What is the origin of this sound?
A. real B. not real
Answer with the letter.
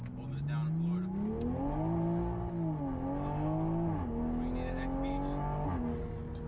A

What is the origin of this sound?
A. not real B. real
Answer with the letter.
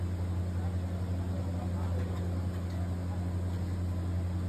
B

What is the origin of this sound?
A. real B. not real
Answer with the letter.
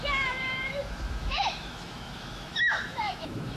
B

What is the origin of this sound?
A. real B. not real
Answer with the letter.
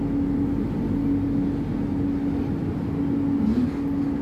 A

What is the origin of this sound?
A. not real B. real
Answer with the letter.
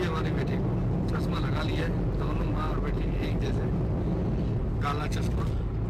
B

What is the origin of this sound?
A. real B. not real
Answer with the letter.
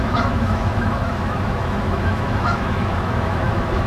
B